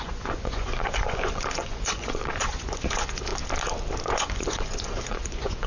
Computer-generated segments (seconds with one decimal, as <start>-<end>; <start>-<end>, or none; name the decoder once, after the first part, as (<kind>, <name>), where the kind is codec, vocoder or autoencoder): 0.0-3.3 (vocoder, Vocos); 4.1-5.7

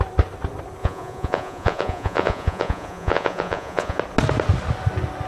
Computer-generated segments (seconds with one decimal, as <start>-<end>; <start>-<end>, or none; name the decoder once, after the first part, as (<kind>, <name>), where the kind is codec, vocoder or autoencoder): 0.8-4.0 (vocoder, Vocos)

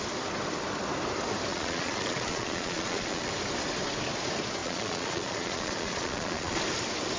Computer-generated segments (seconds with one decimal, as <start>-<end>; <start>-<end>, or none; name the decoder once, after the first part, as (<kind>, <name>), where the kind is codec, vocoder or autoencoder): 1.5-3.3 (vocoder, Vocos); 4.6-6.6

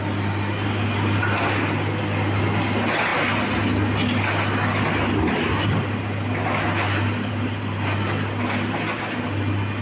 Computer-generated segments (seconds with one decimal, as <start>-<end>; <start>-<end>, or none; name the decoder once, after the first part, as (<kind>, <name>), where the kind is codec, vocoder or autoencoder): none

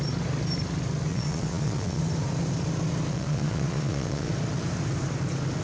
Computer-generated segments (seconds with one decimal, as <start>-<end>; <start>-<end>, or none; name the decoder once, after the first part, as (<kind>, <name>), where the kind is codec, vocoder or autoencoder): 1.1-2.0 (vocoder, Vocos); 3.1-4.3

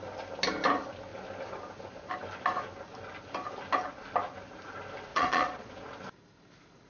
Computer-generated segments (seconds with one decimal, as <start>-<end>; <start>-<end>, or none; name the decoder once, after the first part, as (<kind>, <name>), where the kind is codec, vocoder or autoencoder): 5.1-5.7 (vocoder, Vocos)